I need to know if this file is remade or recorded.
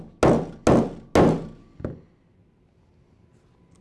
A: recorded